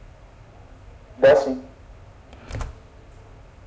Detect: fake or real real